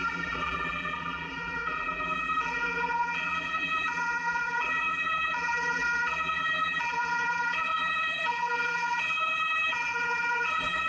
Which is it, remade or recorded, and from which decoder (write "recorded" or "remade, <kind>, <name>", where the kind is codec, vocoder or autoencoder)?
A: remade, vocoder, BigVGAN v2